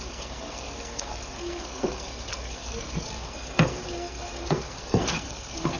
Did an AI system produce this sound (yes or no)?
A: yes